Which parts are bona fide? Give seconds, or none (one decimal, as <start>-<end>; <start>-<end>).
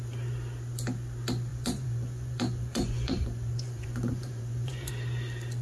0.0-1.5; 4.9-5.6